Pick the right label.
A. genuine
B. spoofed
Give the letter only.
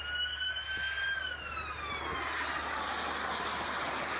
A